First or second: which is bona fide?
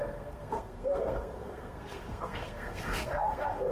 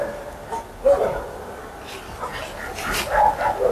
second